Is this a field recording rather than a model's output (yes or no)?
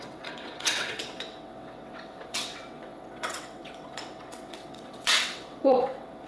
no